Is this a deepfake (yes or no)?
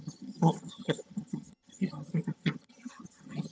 yes